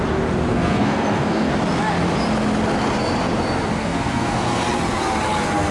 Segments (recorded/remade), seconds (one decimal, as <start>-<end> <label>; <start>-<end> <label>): 0.0-0.5 recorded; 0.5-1.5 remade; 1.5-3.8 recorded; 3.8-4.6 remade; 4.6-5.7 recorded